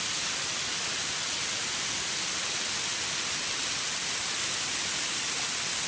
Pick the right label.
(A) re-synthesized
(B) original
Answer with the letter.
B